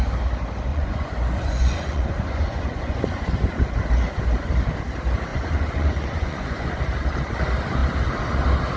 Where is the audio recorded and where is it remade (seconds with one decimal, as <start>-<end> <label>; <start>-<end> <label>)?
0.0-0.7 recorded; 0.7-3.2 remade; 3.2-5.3 recorded; 5.3-6.8 remade; 6.8-8.8 recorded